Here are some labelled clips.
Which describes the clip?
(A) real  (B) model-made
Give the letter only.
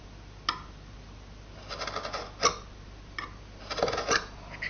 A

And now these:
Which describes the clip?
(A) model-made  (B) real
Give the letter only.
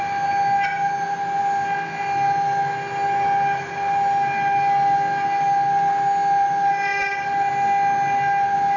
B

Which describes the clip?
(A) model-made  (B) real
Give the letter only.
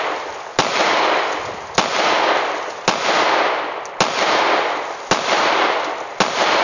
B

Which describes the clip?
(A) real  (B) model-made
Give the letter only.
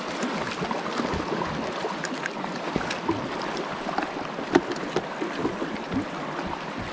A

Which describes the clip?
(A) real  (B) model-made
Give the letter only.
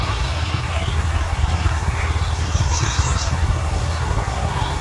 B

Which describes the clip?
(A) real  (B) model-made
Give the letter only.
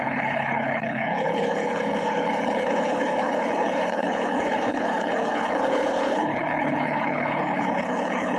B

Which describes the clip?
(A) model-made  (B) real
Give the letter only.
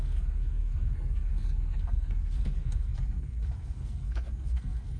A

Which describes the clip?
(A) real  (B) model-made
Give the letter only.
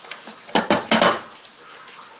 A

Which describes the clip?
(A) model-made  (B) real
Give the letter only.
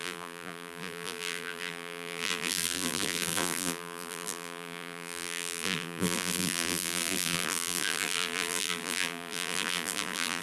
A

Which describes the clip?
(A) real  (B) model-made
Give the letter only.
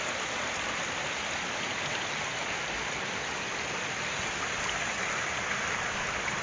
A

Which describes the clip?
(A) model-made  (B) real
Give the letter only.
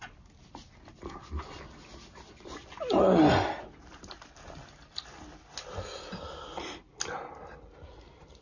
B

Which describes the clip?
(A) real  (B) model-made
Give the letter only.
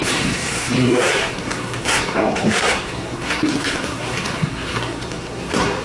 B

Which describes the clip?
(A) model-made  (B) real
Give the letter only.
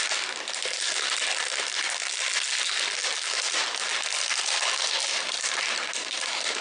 B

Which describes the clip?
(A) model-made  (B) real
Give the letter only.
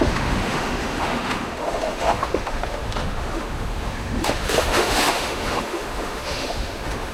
A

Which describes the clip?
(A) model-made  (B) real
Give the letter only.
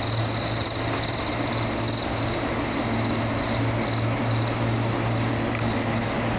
B